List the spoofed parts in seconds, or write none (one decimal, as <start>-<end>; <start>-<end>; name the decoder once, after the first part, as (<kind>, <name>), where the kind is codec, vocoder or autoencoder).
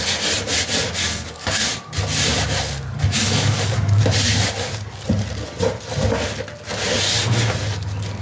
1.0-1.6 (codec, DAC); 3.1-4.0